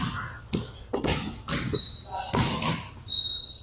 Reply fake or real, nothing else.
real